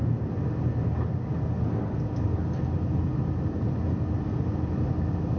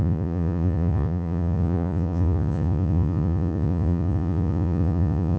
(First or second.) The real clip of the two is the first